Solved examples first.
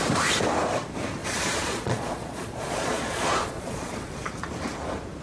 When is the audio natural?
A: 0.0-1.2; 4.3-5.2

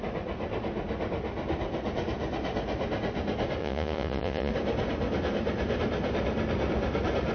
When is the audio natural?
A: 0.0-3.6; 4.5-7.3

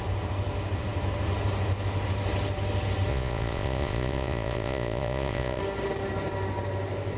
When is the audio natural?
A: 0.0-3.1; 5.6-7.2

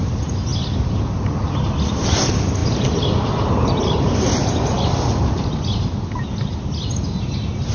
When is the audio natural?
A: 0.0-7.7